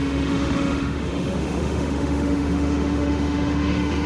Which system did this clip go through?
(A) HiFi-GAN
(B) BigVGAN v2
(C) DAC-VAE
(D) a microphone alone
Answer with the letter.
C